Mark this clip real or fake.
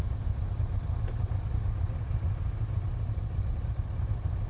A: real